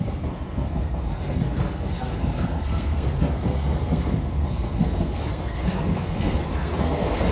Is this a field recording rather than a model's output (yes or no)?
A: no